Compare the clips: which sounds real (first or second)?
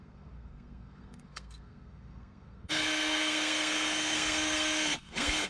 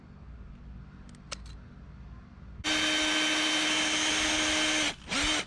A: second